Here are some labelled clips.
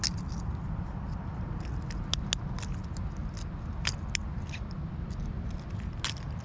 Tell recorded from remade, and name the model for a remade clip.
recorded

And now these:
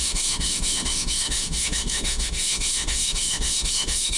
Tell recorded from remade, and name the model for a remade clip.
remade, autoencoder, DAC-VAE